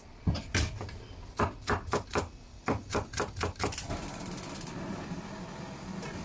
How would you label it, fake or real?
real